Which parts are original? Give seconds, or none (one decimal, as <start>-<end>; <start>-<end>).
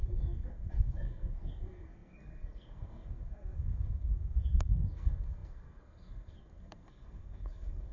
none